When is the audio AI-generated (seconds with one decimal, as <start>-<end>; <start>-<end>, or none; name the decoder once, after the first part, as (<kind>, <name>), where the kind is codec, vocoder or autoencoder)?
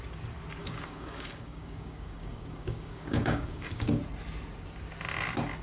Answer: 0.6-4.0 (codec, DAC)